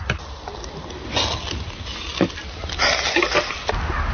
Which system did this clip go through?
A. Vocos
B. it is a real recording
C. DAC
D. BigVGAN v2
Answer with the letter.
B